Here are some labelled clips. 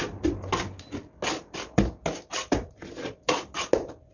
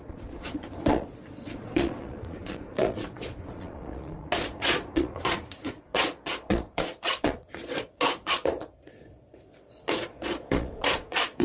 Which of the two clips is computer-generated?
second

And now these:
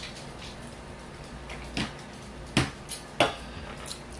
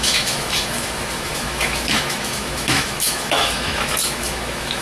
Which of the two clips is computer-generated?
second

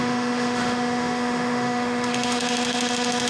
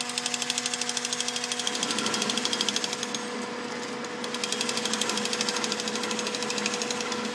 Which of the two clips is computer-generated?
first